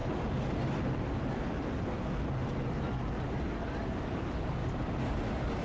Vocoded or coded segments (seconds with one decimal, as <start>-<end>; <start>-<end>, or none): none

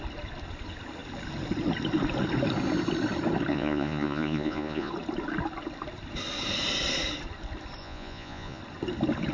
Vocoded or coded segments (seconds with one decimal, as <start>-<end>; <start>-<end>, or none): 3.5-4.9; 7.8-8.6

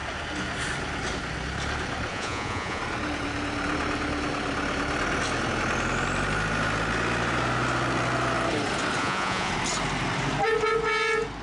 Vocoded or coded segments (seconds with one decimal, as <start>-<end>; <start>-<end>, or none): 2.1-2.8; 9.0-9.5

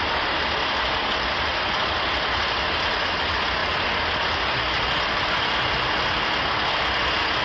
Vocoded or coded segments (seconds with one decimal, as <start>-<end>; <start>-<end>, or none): none

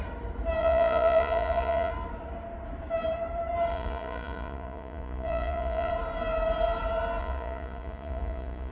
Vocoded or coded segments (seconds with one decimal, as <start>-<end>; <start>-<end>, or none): 0.6-1.9; 3.7-5.9; 7.2-8.7